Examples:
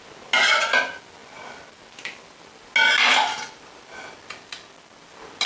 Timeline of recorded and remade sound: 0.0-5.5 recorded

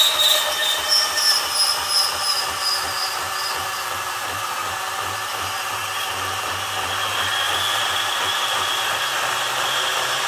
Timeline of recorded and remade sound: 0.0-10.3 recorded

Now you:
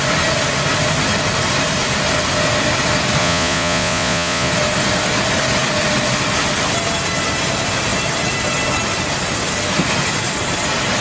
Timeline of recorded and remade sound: 0.0-3.2 recorded; 3.2-4.5 remade; 4.5-11.0 recorded

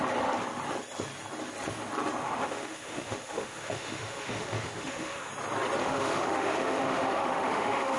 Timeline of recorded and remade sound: 0.0-2.2 recorded; 2.2-5.3 remade; 5.3-5.8 recorded; 5.8-8.0 remade

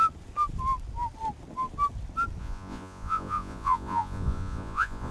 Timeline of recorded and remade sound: 0.0-2.4 recorded; 2.4-5.1 remade

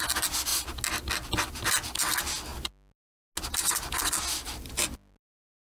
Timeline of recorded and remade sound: 0.0-5.7 recorded

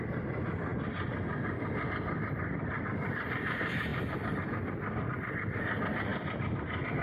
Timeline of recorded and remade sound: 0.0-3.9 remade; 3.9-5.0 recorded; 5.0-6.1 remade; 6.1-7.0 recorded